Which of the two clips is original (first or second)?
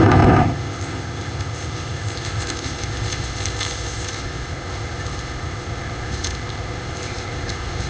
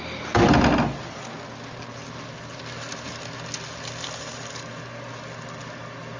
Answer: second